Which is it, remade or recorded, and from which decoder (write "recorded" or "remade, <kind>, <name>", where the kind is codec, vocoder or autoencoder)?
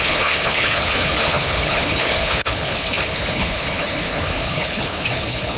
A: remade, codec, HILCodec